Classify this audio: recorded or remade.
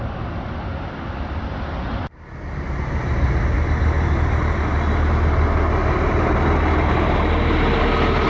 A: recorded